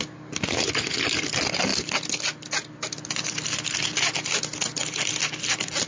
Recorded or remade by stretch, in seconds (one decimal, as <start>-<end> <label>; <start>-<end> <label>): 0.0-5.9 recorded